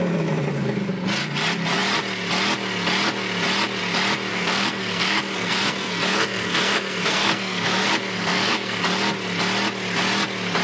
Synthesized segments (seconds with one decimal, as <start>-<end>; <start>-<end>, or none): 4.3-8.8